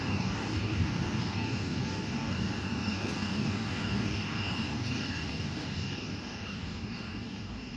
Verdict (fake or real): fake